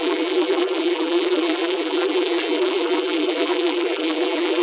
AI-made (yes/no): yes